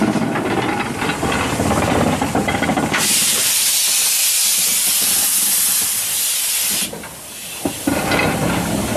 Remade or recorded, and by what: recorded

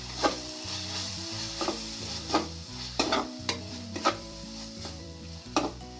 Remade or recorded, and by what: remade, vocoder, BigVGAN v2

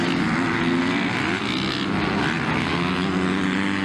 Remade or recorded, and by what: recorded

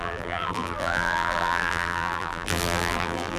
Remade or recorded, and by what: remade, vocoder, BigVGAN v2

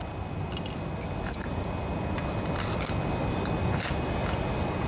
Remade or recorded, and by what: recorded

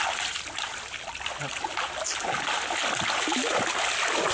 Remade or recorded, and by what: recorded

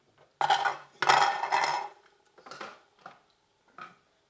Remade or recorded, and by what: recorded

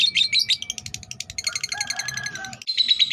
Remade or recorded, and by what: recorded